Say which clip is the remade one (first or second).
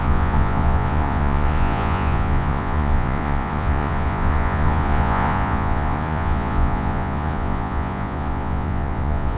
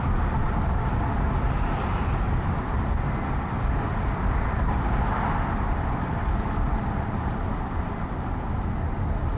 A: first